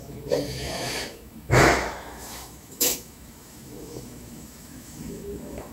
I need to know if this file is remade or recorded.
remade